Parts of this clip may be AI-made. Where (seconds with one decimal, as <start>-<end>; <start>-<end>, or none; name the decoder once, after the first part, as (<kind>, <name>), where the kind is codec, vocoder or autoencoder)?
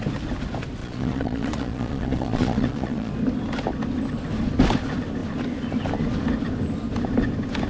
0.8-3.1 (vocoder, Vocos)